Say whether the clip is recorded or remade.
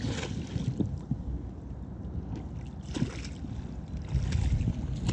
recorded